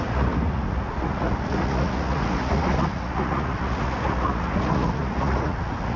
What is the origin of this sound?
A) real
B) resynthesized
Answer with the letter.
B